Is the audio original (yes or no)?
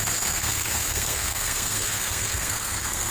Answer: no